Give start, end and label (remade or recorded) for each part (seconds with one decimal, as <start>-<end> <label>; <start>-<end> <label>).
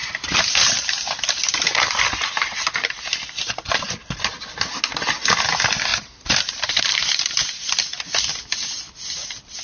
0.0-3.5 remade; 3.5-5.9 recorded; 5.9-7.3 remade; 7.3-9.6 recorded